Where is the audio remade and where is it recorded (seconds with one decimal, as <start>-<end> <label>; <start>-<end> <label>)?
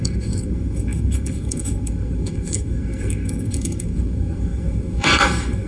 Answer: 0.0-5.7 remade